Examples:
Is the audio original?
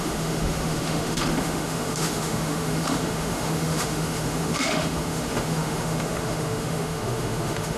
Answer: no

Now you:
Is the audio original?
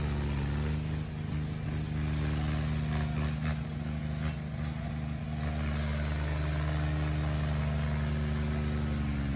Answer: yes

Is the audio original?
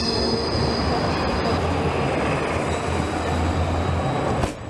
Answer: yes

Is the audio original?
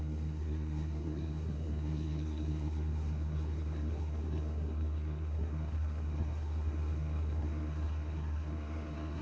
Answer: no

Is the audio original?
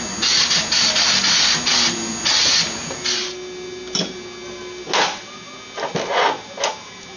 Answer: yes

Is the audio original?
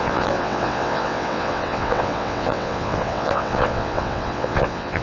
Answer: no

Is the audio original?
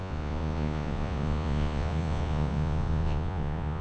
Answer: no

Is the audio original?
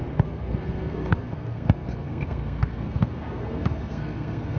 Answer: no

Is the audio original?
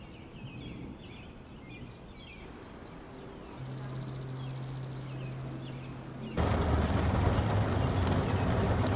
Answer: yes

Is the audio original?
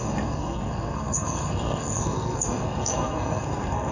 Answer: no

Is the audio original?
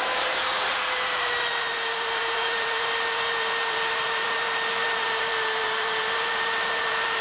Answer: no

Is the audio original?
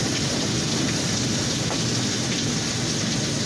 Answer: yes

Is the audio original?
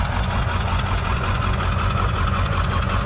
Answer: no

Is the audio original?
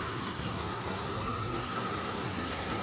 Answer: no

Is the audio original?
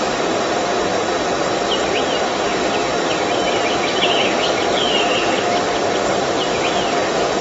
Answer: yes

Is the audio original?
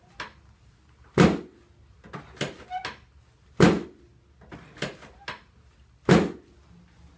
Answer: yes